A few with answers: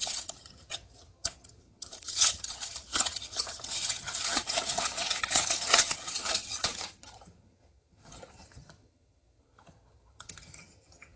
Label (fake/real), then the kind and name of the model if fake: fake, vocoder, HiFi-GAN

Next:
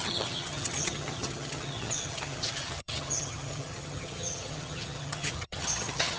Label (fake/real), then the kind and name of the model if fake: fake, vocoder, HiFi-GAN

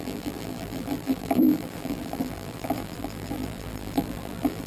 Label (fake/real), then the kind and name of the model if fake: fake, vocoder, BigVGAN v2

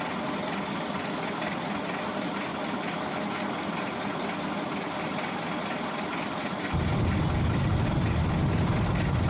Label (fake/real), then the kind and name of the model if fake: real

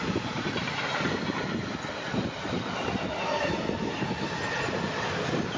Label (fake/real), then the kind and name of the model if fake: real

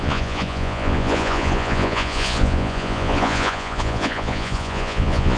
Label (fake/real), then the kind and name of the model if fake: fake, vocoder, Vocos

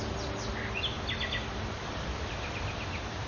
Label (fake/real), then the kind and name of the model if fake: real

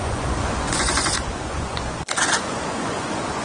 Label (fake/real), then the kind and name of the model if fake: fake, vocoder, Vocos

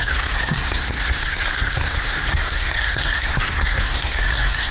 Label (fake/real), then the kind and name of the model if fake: fake, codec, SNAC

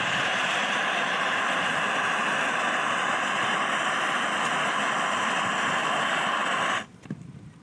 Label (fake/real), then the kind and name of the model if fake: fake, vocoder, BigVGAN v2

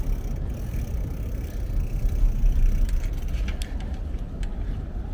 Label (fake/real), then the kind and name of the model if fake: real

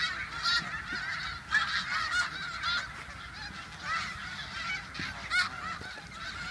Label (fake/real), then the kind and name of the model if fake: real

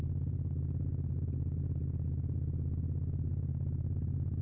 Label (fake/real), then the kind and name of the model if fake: real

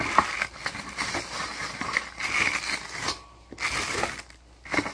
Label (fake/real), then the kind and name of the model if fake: real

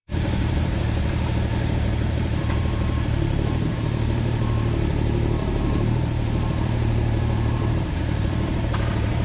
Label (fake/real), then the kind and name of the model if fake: fake, vocoder, BigVGAN v2